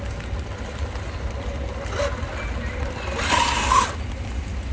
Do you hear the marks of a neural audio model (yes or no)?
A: no